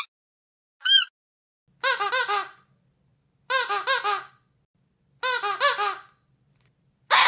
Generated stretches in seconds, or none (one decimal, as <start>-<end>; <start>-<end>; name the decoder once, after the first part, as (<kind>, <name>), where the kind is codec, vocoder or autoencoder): none